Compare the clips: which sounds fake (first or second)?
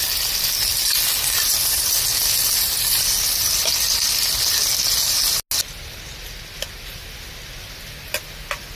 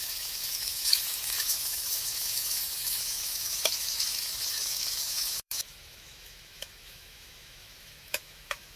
second